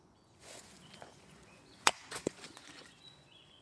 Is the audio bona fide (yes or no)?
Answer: no